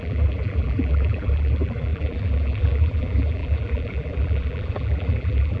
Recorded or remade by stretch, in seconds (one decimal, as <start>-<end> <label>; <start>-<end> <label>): 0.0-5.6 remade